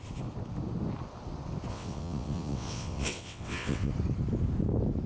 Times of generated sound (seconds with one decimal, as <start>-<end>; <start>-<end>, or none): 1.7-3.9